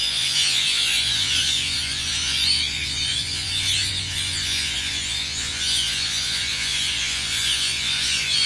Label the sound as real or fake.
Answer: fake